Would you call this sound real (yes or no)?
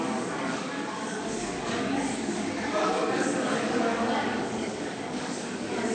no